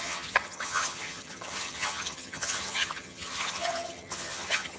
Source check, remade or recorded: remade